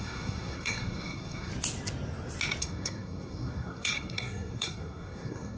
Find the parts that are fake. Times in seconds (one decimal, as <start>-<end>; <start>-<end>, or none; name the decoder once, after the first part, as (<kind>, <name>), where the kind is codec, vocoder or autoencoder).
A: 0.0-1.5 (codec, SNAC); 2.6-5.6